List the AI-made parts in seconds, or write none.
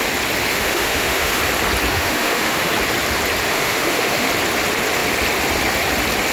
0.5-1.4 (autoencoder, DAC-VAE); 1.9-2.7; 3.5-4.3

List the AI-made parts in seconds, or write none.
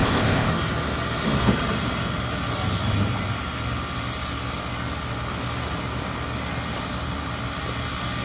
0.0-0.5 (codec, ZipCodec)